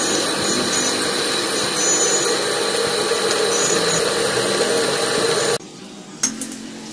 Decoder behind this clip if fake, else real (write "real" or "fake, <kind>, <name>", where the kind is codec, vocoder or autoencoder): real